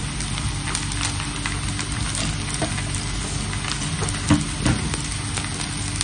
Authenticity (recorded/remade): recorded